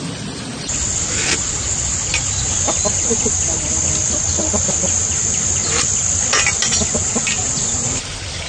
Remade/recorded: recorded